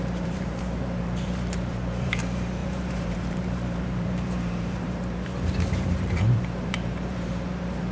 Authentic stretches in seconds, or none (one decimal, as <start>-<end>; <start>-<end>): none